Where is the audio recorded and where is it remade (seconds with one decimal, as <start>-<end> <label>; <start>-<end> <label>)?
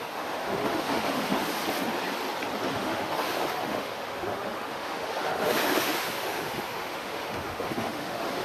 0.0-1.6 remade; 1.6-2.7 recorded; 2.7-8.4 remade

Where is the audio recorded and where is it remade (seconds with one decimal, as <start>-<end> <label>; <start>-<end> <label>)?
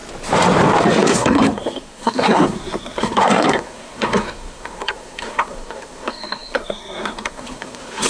0.0-1.1 recorded; 1.1-8.1 remade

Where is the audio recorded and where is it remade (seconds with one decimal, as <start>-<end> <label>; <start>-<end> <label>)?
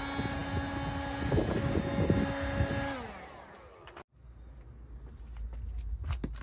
0.0-6.4 recorded